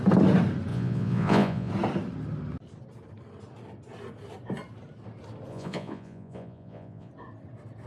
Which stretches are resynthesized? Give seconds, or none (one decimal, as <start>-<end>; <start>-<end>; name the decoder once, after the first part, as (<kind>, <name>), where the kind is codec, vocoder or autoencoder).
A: 0.7-1.7 (vocoder, Vocos); 5.5-7.1